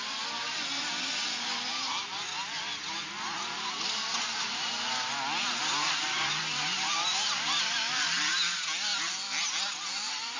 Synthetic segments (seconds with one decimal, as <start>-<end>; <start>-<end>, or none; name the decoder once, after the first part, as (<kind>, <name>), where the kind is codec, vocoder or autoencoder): none